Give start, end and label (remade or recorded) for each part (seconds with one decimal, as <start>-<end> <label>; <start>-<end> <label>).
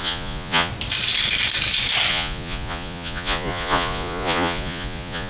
0.0-0.7 remade; 0.7-2.1 recorded; 2.1-5.3 remade